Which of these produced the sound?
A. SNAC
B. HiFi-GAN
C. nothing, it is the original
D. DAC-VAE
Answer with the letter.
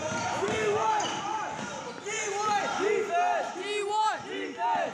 C